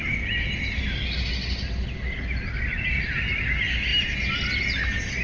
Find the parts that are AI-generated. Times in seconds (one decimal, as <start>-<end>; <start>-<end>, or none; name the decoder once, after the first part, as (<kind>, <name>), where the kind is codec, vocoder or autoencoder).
none